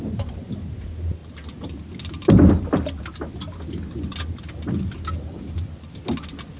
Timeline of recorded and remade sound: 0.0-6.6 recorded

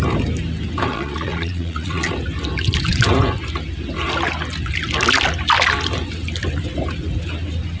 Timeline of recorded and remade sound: 0.0-0.9 recorded; 0.9-2.1 remade; 2.1-7.8 recorded

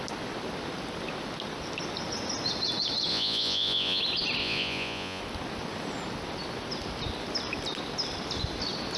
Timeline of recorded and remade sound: 0.0-3.1 recorded; 3.1-4.0 remade; 4.0-4.4 recorded; 4.4-5.2 remade; 5.2-9.0 recorded

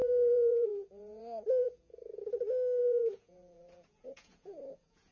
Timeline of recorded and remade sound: 0.0-1.2 remade; 1.2-1.6 recorded; 1.6-2.2 remade; 2.2-2.8 recorded; 2.8-5.1 remade